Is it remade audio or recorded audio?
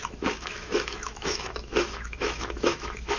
remade